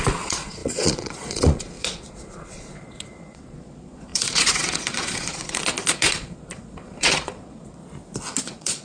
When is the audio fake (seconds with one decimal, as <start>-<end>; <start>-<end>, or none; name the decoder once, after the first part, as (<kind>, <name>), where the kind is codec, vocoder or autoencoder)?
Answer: 0.0-7.8 (vocoder, Vocos); 8.4-8.8